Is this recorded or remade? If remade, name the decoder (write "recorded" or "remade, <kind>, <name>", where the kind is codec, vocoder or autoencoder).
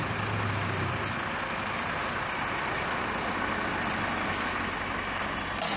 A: recorded